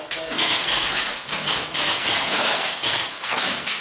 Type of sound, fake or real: fake